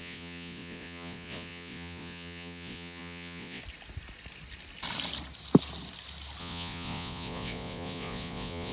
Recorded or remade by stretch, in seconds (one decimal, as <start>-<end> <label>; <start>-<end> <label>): 0.0-3.6 remade; 3.6-6.4 recorded; 6.4-8.7 remade